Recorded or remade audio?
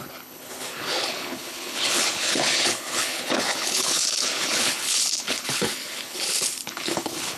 remade